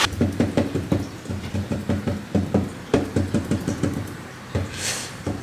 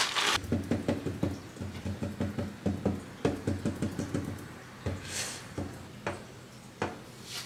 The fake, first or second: first